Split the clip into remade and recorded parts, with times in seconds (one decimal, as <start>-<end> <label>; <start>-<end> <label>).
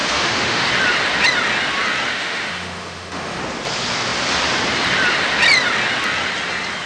0.0-0.7 remade; 0.7-2.1 recorded; 2.1-3.4 remade; 3.4-6.9 recorded